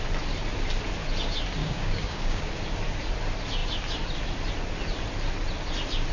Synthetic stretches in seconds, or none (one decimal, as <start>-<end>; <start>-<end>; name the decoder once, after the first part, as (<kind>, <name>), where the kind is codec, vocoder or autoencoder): 1.6-2.5 (codec, DAC)